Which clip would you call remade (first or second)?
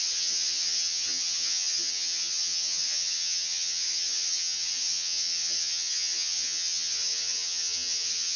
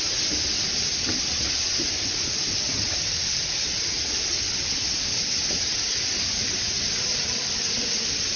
first